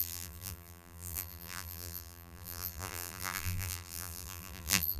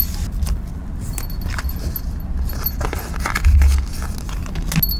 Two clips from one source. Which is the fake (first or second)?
first